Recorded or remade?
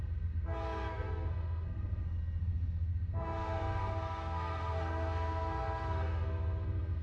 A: remade